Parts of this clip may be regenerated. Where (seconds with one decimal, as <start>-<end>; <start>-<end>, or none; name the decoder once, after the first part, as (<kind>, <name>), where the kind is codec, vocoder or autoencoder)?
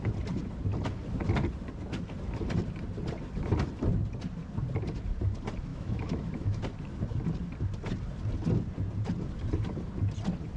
5.7-6.6 (autoencoder, DAC-VAE)